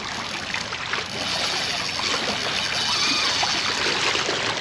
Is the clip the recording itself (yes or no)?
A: yes